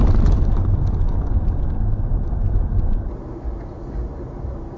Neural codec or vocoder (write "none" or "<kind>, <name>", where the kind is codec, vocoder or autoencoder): none